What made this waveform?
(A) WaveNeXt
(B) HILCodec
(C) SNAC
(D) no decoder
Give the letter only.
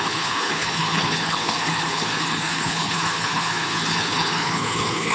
B